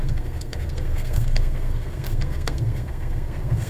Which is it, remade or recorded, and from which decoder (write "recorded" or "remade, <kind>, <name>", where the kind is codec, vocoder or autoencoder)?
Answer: remade, codec, SNAC